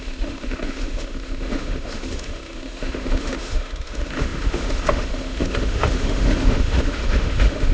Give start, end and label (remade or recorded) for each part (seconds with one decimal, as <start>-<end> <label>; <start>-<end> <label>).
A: 0.0-7.7 remade